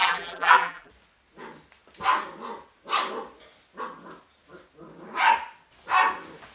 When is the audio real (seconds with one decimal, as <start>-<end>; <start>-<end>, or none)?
0.9-6.5